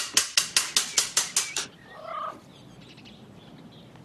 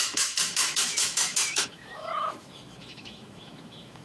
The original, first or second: first